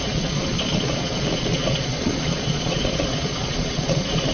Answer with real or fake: fake